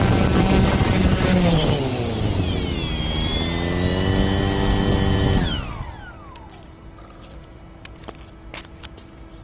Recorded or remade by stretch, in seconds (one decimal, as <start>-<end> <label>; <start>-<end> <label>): 0.0-9.4 recorded